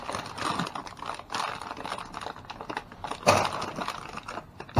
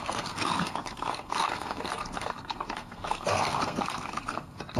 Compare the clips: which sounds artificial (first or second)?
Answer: second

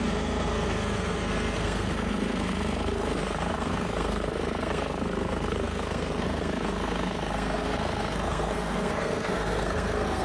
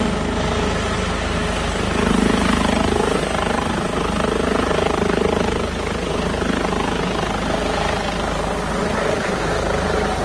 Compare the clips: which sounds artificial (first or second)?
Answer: first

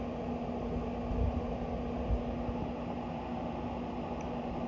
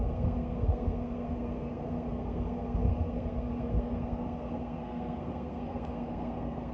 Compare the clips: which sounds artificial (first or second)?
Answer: second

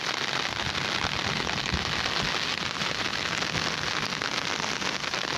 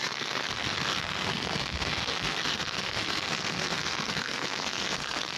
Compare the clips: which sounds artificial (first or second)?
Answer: second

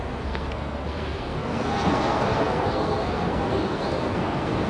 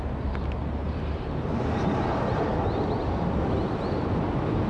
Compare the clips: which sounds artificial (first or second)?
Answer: first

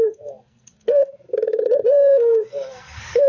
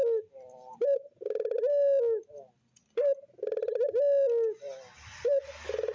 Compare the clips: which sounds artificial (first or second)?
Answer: first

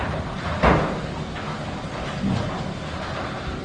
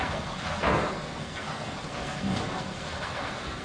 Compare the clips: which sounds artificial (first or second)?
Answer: second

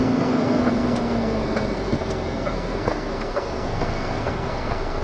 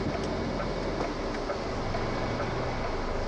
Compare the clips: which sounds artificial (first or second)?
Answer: first